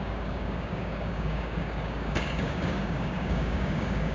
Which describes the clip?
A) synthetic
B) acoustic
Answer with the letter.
A